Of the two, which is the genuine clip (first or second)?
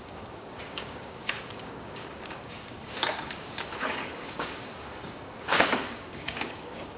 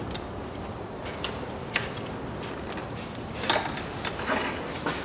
second